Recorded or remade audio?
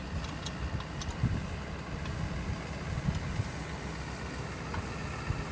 recorded